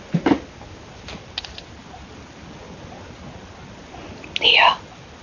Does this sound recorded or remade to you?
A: recorded